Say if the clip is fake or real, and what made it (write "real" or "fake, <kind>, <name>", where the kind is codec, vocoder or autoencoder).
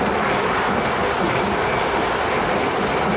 real